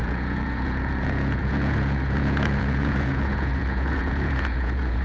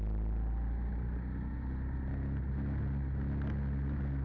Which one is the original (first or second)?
second